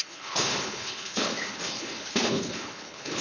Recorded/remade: remade